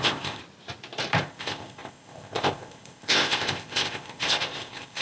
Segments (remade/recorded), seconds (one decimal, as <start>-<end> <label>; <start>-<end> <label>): 0.0-0.4 remade; 0.4-1.2 recorded; 1.2-5.0 remade